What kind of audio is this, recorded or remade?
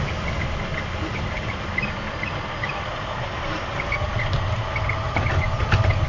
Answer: recorded